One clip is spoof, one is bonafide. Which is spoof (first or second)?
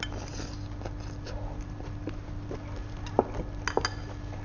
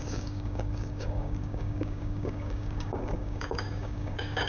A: second